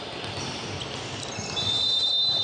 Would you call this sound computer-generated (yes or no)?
no